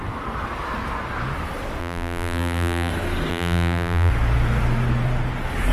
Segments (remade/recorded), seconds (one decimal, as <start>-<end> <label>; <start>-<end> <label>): 0.0-1.8 recorded; 1.8-2.9 remade; 2.9-3.3 recorded; 3.3-4.1 remade; 4.1-5.7 recorded